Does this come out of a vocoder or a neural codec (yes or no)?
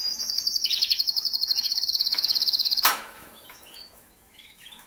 yes